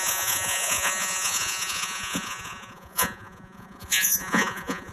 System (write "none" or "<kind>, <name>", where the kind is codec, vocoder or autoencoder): vocoder, Vocos